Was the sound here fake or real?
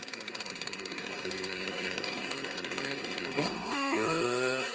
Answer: fake